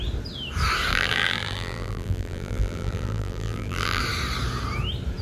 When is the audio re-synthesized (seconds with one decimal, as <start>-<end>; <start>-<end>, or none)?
0.9-4.0